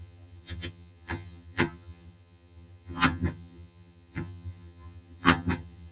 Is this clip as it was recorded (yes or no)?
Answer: no